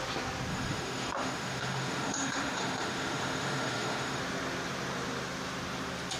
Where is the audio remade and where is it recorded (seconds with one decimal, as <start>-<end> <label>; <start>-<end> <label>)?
0.0-0.5 recorded; 0.5-4.2 remade; 4.2-6.2 recorded